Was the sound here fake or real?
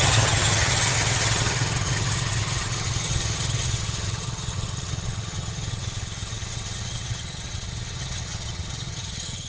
fake